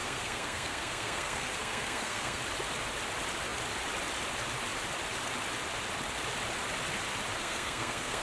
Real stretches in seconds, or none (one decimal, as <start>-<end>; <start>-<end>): 2.4-7.4

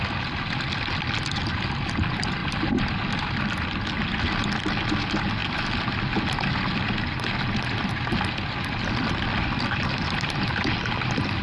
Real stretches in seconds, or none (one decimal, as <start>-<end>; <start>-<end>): 0.0-11.4

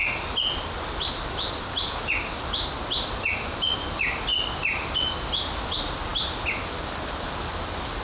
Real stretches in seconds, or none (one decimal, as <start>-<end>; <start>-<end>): 0.0-8.0

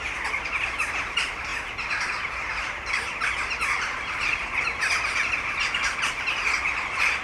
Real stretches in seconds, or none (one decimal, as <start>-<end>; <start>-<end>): 0.0-7.2

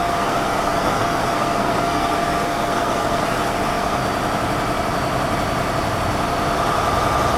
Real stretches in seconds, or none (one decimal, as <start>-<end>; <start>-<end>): 4.0-7.4

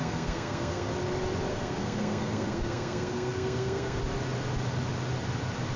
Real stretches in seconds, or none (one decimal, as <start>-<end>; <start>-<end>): 0.9-1.5; 4.0-5.8

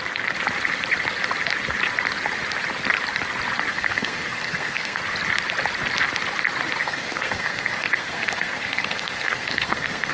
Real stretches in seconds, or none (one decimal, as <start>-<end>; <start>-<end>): 0.0-3.7; 5.0-6.8

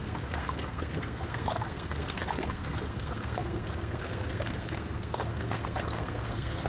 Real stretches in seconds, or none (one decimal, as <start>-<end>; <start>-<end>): none